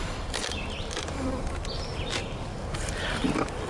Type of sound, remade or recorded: remade